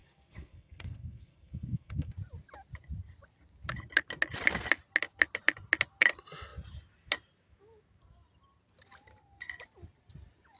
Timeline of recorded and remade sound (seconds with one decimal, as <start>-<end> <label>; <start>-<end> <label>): 0.0-2.1 remade; 2.1-10.6 recorded